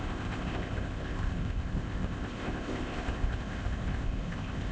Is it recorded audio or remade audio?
remade